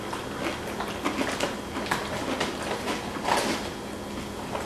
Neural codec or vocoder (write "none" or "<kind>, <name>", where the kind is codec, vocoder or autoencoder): none